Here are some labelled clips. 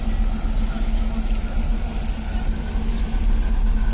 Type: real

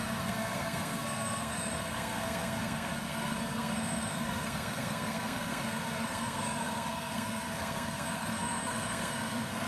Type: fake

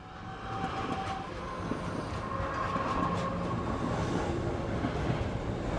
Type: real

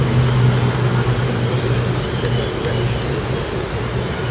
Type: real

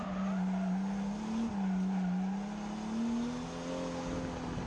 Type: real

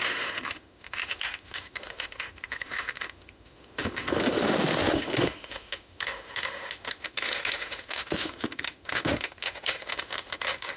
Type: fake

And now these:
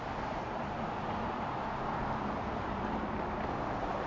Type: real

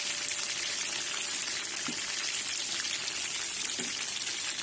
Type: real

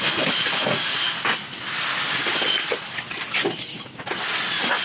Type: real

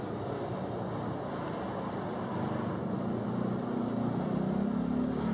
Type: real